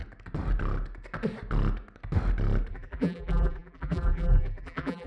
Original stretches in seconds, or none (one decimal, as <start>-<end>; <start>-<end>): 0.0-2.7